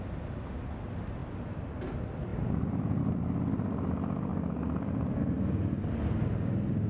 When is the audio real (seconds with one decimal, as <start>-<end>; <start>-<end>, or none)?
0.0-1.2; 1.8-6.9